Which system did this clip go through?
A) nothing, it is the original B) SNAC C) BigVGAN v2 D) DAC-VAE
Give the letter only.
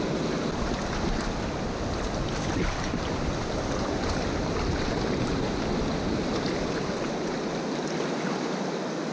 A